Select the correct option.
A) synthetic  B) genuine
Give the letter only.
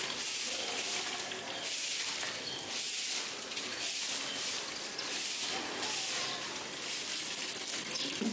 B